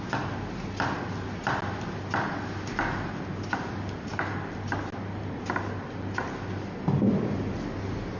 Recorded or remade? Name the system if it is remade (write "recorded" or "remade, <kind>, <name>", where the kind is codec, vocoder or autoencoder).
recorded